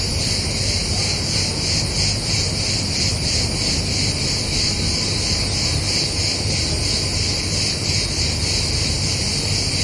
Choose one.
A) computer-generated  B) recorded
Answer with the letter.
B